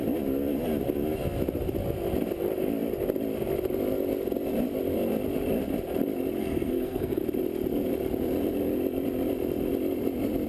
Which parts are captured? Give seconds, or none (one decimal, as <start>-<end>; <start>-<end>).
0.0-6.4; 7.2-10.5

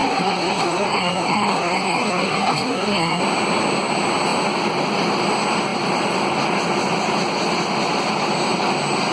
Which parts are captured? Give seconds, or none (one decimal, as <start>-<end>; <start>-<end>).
3.2-9.1

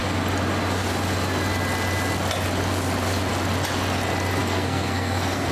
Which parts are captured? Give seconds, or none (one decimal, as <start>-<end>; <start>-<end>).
0.0-4.4

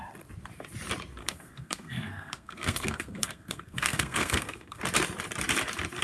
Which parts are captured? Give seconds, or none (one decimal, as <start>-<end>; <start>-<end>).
0.0-1.2; 4.8-6.0